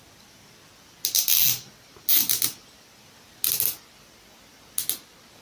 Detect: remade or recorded recorded